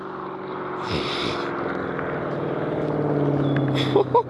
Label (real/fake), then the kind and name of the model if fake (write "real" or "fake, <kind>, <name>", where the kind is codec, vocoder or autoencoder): real